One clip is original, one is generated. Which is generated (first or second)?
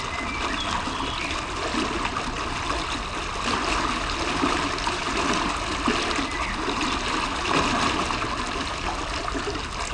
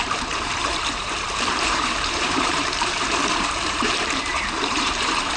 second